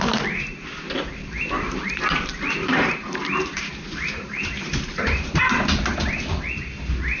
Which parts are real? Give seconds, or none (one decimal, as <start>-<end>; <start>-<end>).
0.0-1.1; 5.4-7.2